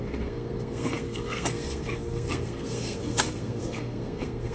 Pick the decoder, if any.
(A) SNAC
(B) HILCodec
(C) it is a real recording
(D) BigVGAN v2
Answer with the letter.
A